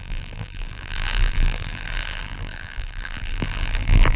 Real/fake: fake